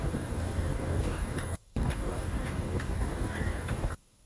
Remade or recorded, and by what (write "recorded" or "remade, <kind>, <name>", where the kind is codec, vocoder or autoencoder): remade, codec, DAC